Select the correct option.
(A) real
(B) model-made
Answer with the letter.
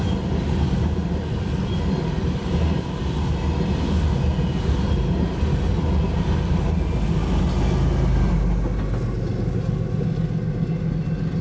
A